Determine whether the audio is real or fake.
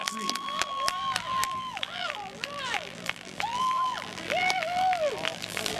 fake